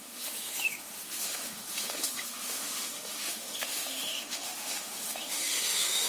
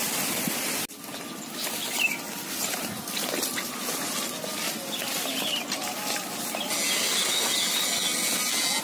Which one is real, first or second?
second